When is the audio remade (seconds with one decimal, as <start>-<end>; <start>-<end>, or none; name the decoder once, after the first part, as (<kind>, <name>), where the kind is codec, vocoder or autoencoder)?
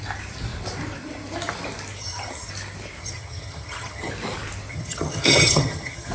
2.0-2.5 (vocoder, HiFi-GAN); 3.0-4.1; 4.7-6.1